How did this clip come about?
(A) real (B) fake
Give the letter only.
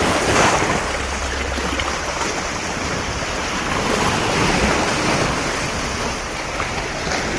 A